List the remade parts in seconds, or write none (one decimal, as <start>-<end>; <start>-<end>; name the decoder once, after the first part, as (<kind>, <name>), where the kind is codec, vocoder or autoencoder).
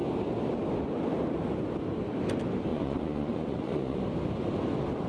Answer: 2.7-4.0 (vocoder, Vocos)